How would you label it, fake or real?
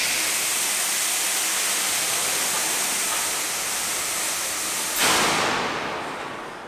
real